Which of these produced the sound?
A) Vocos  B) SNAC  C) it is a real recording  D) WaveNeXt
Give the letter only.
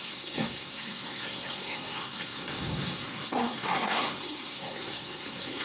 B